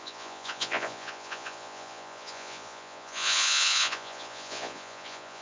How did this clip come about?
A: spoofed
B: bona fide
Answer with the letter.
A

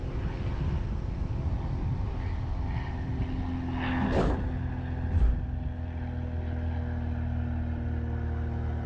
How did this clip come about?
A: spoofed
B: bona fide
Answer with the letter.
B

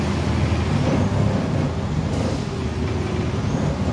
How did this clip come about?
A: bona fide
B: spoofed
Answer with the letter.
A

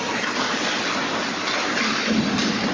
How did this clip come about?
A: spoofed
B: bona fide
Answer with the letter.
B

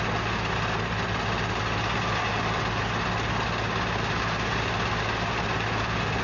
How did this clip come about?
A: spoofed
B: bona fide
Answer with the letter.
B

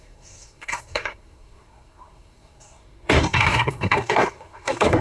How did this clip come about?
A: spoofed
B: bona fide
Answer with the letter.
A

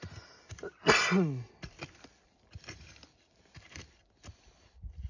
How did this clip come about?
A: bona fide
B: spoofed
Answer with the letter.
A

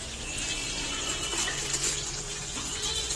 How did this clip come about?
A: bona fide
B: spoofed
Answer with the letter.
B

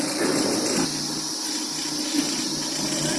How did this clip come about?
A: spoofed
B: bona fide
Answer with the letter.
B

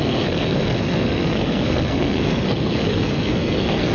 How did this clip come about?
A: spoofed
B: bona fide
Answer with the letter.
A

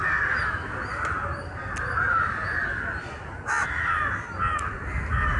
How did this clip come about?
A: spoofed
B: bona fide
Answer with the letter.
B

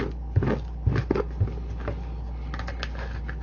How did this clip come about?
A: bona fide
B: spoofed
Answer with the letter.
A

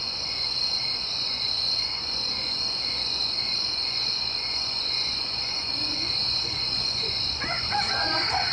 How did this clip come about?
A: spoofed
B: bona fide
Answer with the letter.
A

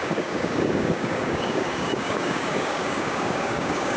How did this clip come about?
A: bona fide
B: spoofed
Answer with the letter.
B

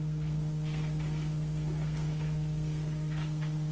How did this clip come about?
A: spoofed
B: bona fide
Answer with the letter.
A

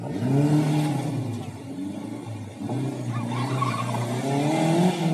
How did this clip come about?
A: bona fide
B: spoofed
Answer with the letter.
A